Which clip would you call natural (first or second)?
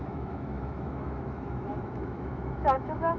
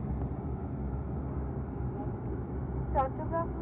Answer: second